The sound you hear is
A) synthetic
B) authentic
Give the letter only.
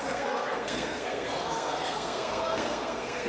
A